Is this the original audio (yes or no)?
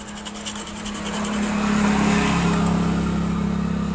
yes